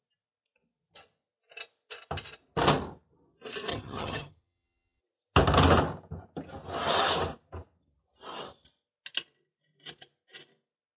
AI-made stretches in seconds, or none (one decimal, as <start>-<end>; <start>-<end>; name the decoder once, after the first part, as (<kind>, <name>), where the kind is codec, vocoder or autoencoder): 3.7-5.0 (vocoder, HiFi-GAN)